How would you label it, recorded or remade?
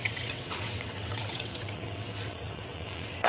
remade